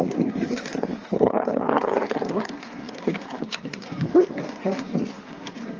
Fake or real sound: fake